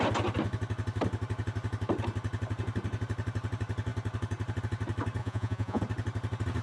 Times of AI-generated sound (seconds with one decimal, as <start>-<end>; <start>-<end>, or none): 5.2-5.8